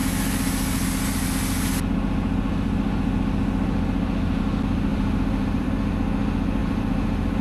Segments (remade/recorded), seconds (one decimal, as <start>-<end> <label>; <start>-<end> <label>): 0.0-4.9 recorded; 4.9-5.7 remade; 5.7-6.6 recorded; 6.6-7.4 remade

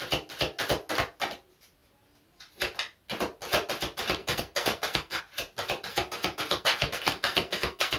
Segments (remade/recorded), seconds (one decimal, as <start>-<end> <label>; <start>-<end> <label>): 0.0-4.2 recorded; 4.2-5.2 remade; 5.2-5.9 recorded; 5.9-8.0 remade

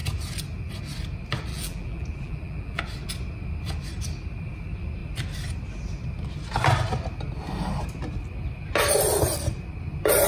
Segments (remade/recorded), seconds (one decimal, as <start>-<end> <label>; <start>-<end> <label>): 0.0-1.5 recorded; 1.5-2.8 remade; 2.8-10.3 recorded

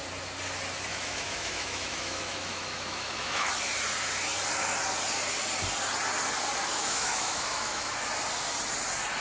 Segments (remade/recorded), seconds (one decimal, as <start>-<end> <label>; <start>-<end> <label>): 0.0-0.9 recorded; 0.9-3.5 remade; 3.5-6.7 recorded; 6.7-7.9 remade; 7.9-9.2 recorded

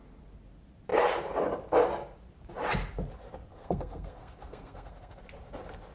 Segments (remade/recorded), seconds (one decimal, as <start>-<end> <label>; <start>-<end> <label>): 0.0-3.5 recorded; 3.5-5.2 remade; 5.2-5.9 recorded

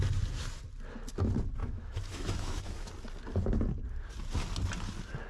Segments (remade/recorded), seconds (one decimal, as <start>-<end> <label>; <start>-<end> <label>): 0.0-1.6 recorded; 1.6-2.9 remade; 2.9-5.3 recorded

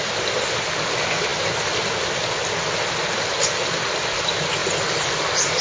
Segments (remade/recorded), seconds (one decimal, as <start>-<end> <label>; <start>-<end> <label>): 0.0-5.6 recorded

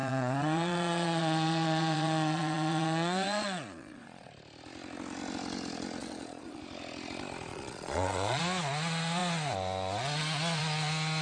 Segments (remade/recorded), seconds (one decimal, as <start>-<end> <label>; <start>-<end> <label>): 0.0-4.3 remade; 4.3-6.0 recorded; 6.0-6.6 remade; 6.6-7.5 recorded; 7.5-8.4 remade; 8.4-11.2 recorded